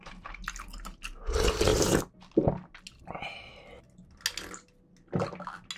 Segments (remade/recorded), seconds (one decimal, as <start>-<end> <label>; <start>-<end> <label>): 0.0-5.8 recorded